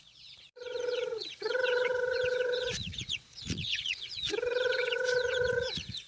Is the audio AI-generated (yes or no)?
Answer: yes